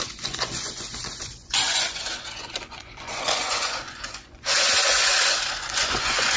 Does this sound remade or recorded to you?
remade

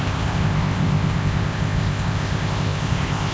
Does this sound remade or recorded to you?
remade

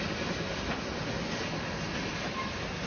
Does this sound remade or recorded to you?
recorded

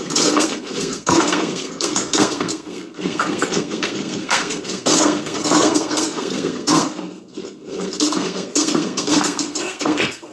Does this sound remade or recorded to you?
remade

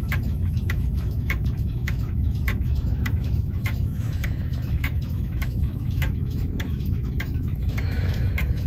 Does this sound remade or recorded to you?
remade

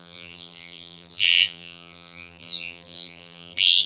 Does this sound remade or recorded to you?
remade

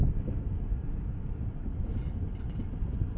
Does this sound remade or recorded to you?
recorded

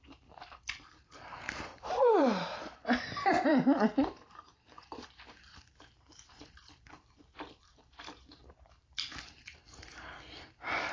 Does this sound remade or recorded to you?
remade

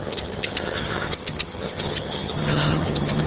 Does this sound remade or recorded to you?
remade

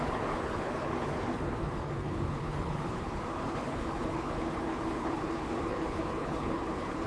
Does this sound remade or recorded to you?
remade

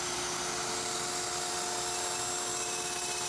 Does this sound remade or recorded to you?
recorded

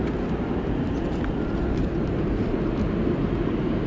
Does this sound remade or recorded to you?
recorded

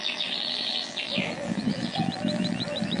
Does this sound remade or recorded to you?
remade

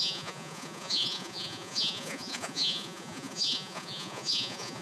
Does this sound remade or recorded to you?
remade